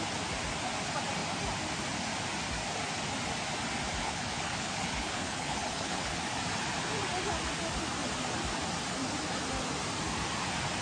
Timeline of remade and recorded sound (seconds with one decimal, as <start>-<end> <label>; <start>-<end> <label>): 0.0-4.0 recorded; 4.0-6.2 remade; 6.2-10.8 recorded